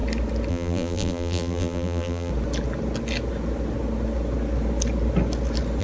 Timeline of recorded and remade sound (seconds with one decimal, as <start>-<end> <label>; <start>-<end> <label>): 0.0-0.5 recorded; 0.5-2.3 remade; 2.3-5.8 recorded